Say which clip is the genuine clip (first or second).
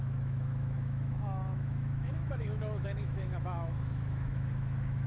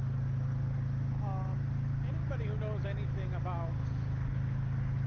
second